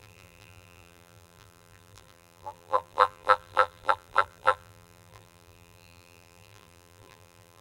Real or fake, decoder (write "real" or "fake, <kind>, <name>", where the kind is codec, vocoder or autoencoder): fake, vocoder, BigVGAN v2